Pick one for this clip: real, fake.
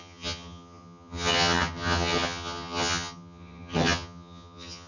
fake